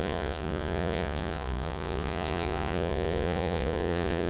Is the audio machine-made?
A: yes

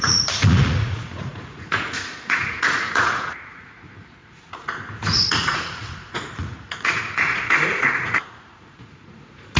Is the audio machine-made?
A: yes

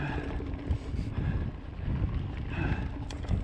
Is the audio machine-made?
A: no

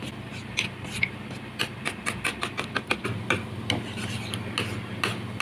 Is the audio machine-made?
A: no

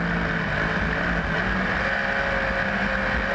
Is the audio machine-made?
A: no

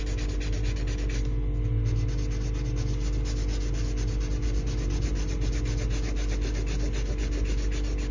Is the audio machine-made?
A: no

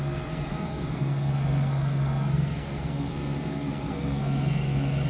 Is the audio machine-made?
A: yes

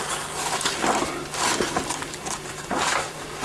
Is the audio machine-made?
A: no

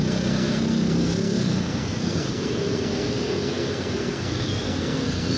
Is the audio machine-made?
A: yes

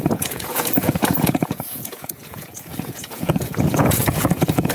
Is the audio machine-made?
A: yes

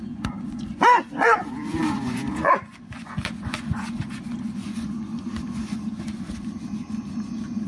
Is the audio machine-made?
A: yes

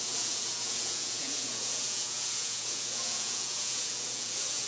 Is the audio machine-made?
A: yes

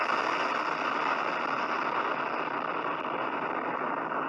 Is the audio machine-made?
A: no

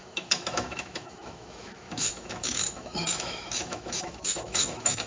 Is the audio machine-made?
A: yes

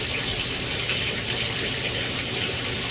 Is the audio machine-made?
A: yes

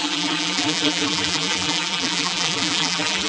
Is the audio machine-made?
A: yes